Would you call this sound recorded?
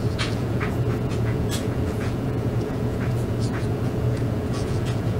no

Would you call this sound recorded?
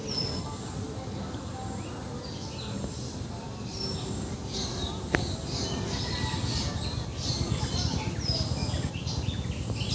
yes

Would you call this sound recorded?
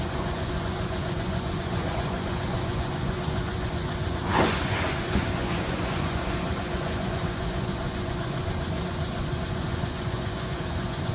no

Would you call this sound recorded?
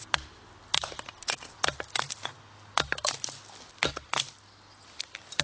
yes